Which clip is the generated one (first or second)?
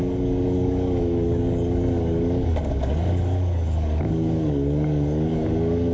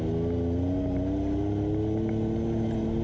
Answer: first